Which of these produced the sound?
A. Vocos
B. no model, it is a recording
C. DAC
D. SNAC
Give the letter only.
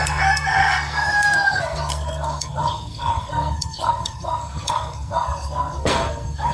D